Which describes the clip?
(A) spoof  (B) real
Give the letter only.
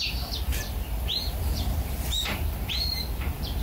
A